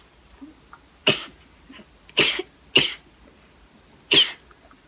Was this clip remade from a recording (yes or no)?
no